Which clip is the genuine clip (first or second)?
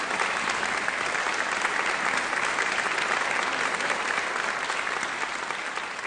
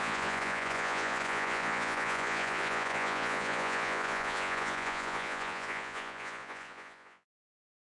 first